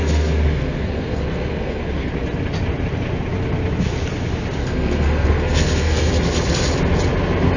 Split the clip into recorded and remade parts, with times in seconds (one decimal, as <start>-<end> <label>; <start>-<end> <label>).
0.0-2.1 remade; 2.1-4.6 recorded; 4.6-6.1 remade; 6.1-7.6 recorded